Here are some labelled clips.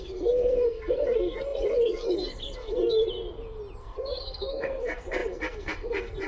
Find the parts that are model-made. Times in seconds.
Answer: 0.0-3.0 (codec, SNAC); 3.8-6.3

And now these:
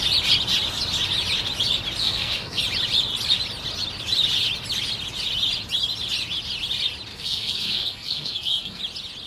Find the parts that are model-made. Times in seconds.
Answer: 2.0-2.6 (codec, SNAC); 7.1-8.8